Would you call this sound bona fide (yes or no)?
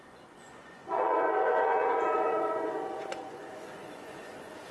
no